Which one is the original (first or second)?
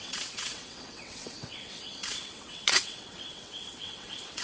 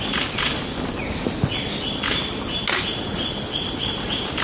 second